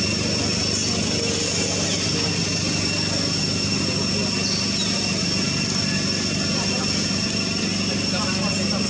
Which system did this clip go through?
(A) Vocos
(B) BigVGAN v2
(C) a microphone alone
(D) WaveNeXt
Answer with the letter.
C